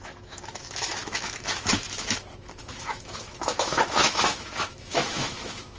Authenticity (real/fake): fake